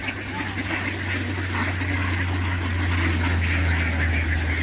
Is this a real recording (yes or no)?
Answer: yes